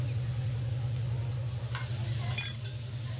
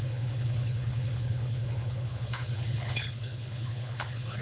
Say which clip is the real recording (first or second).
first